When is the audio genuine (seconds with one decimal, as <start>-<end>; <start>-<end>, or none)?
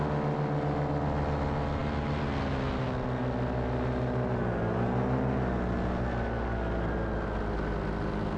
0.0-8.4